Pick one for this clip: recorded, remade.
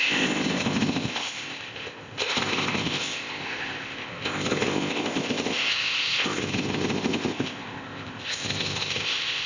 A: remade